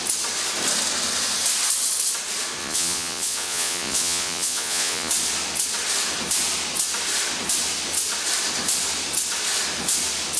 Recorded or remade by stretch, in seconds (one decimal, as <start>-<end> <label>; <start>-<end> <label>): 0.0-2.6 recorded; 2.6-5.1 remade; 5.1-10.4 recorded